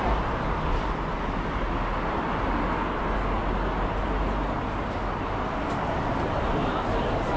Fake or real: real